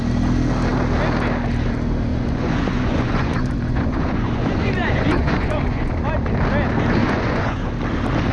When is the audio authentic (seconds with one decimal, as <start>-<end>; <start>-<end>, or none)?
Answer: 0.0-2.1; 5.9-7.0; 7.7-8.3

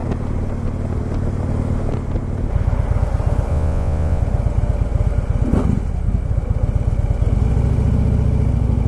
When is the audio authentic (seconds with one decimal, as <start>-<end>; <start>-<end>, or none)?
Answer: 0.0-3.5; 4.2-8.9

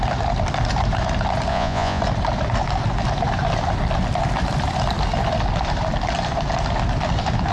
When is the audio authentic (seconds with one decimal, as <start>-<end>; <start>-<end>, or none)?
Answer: 0.0-1.5; 2.0-7.5